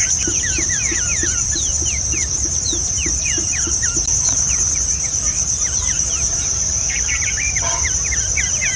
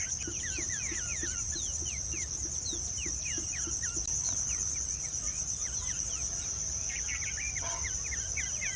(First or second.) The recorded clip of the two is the second